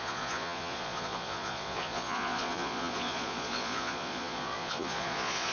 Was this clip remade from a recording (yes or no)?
yes